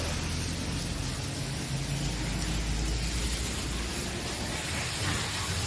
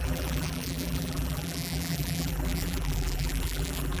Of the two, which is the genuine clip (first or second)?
first